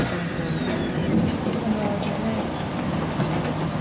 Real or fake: real